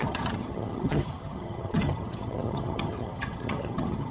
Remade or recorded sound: remade